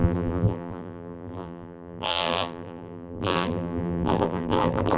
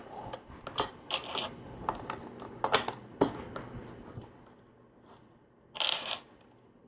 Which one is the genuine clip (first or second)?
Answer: second